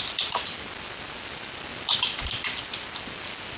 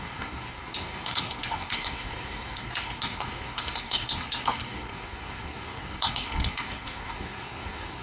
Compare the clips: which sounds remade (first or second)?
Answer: second